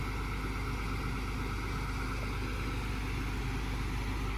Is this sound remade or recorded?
recorded